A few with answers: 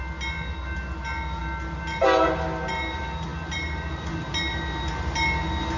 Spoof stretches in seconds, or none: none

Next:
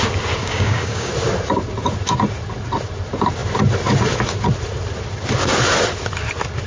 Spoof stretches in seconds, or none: 0.4-1.1 (codec, DAC)

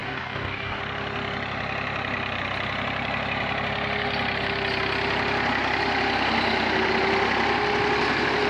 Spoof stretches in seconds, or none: 0.0-0.8 (codec, DAC)

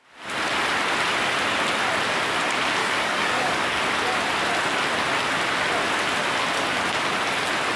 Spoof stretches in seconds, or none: 2.8-3.8 (codec, DAC)

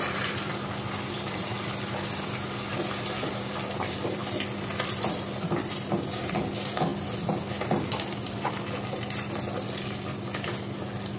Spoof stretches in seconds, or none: none

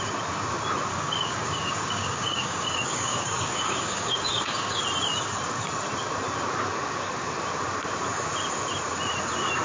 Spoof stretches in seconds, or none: 0.9-4.8 (codec, DAC)